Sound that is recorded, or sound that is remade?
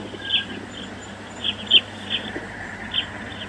recorded